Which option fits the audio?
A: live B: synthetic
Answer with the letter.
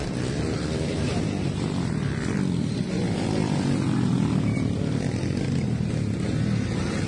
A